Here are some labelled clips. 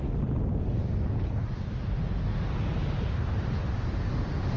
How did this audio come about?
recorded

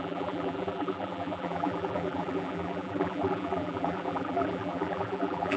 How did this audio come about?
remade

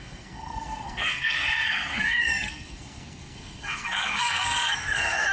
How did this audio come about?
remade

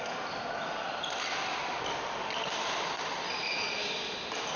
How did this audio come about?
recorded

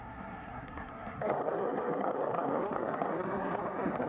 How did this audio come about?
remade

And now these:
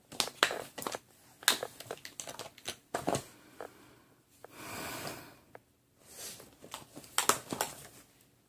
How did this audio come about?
recorded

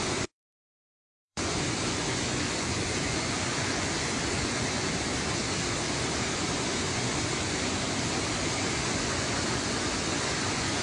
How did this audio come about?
remade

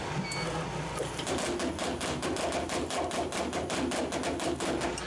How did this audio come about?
recorded